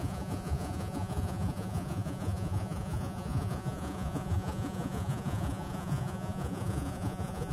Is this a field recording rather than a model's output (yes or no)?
no